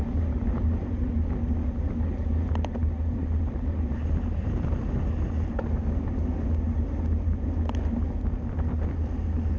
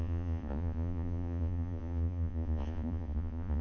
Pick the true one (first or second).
first